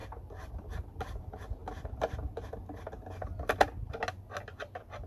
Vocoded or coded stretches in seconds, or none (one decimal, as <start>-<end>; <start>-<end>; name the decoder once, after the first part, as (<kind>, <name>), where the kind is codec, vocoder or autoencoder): none